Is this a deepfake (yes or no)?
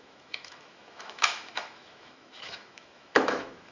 yes